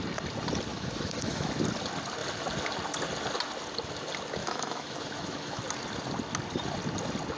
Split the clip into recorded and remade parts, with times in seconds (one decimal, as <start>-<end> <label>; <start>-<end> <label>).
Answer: 0.0-0.7 recorded; 0.7-1.5 remade; 1.5-4.4 recorded; 4.4-5.6 remade; 5.6-7.4 recorded